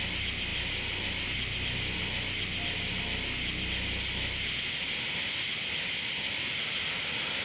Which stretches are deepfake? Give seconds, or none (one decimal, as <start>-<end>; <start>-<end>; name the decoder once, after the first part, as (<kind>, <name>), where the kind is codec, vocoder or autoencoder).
none